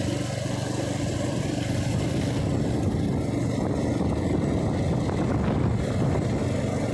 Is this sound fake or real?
real